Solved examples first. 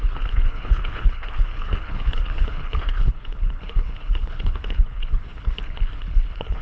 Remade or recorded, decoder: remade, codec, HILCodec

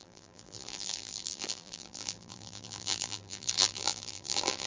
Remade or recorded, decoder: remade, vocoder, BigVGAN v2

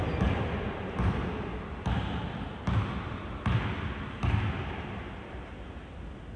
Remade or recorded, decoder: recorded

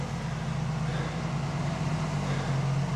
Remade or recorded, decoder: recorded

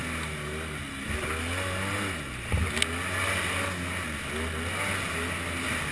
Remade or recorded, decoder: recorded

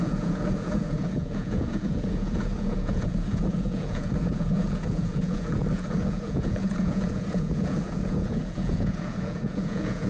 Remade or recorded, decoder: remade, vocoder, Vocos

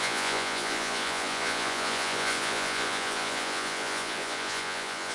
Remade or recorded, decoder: remade, vocoder, Vocos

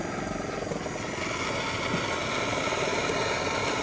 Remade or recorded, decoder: recorded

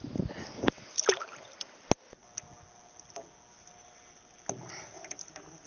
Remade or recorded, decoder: recorded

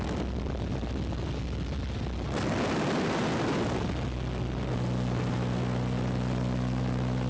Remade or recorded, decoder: recorded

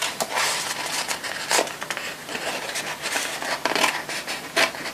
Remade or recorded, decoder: recorded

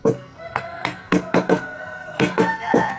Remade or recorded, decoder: remade, codec, SNAC